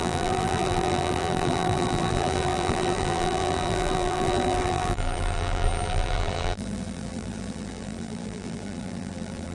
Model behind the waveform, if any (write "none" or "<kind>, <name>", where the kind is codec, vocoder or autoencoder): vocoder, BigVGAN v2